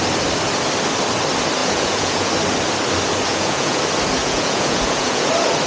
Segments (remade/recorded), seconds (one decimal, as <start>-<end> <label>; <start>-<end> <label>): 0.0-1.6 recorded; 1.6-2.3 remade; 2.3-3.3 recorded; 3.3-3.8 remade; 3.8-4.2 recorded; 4.2-5.3 remade; 5.3-5.7 recorded